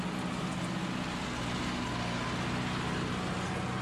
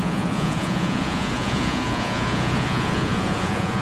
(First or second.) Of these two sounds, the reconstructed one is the second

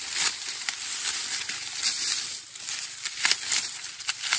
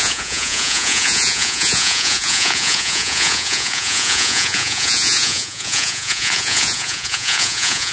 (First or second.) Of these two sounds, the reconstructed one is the second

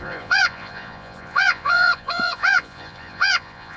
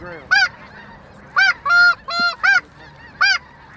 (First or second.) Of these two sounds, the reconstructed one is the first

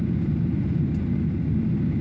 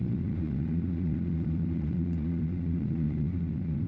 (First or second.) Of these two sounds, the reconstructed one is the second